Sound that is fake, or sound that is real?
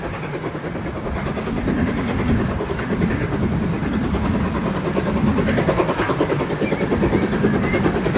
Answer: real